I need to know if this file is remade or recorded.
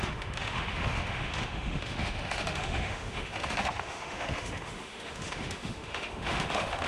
remade